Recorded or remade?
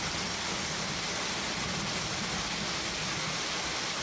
recorded